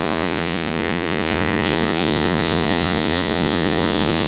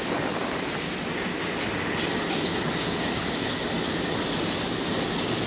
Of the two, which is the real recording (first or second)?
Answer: second